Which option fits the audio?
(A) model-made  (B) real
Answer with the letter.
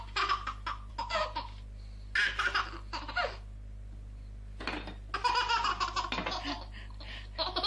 B